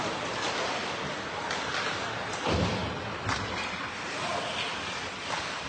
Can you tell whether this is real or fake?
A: real